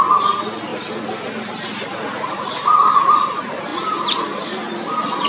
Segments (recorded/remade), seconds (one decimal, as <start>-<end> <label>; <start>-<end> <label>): 0.0-5.3 recorded